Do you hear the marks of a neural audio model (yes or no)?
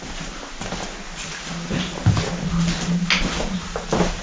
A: no